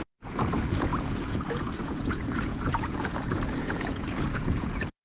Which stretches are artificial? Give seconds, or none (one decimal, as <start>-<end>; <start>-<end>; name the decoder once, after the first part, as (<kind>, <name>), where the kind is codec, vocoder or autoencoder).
0.0-5.0 (vocoder, Vocos)

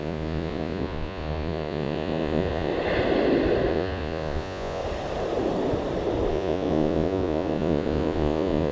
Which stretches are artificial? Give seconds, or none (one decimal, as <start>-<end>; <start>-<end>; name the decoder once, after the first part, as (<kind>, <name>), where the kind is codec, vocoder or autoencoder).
0.0-2.7 (vocoder, Vocos); 3.7-4.8; 6.3-8.7

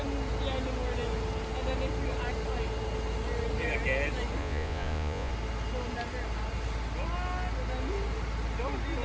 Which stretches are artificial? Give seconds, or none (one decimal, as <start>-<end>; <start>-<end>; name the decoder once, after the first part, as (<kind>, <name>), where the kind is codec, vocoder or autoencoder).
4.4-5.3 (vocoder, Vocos)

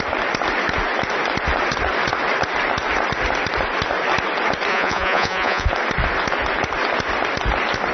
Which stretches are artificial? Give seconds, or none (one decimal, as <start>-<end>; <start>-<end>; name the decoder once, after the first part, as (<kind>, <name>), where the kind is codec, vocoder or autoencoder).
4.7-5.7 (vocoder, Vocos)

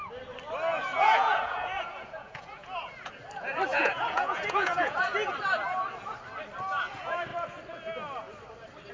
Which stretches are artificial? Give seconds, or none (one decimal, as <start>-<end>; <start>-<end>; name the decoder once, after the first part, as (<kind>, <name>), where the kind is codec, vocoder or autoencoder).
0.7-3.1 (vocoder, Vocos); 3.7-5.0

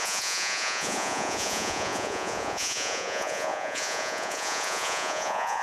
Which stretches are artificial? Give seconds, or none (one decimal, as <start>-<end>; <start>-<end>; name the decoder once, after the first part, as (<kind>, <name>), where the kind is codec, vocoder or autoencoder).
0.0-5.6 (vocoder, Vocos)